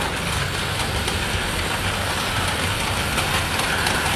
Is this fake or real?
real